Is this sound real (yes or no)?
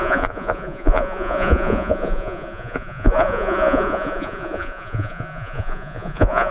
no